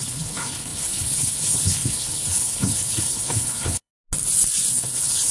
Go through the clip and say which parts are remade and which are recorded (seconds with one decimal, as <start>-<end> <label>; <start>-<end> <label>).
0.0-3.9 remade; 3.9-4.7 recorded; 4.7-5.3 remade